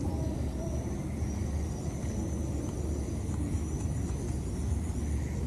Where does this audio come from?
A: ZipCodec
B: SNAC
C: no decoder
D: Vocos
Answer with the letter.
C